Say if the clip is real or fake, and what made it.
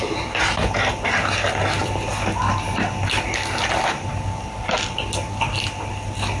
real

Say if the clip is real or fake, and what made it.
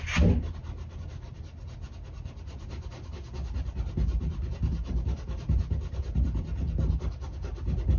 real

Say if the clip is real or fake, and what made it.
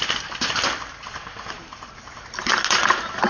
real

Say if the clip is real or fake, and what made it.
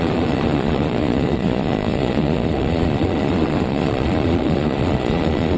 fake, vocoder, Vocos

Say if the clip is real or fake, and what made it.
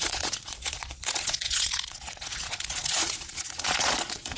fake, vocoder, Vocos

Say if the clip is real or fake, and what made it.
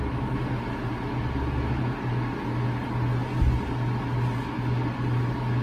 real